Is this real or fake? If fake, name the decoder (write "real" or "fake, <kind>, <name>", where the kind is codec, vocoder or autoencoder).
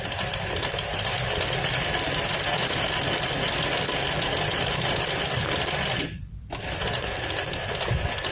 real